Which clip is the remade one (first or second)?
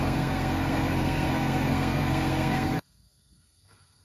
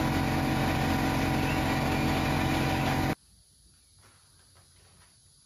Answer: first